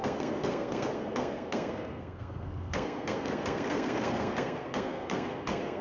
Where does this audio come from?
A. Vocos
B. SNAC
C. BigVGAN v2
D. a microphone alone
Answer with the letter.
B